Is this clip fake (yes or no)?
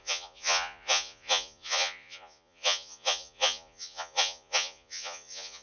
yes